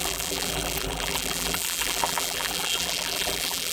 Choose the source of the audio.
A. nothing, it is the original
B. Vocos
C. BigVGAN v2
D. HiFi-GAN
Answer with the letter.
C